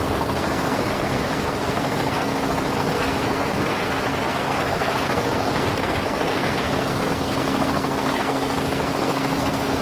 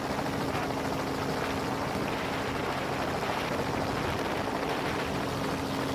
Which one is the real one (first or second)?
second